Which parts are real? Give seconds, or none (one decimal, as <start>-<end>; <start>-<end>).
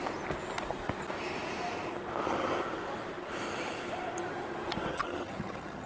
0.0-4.9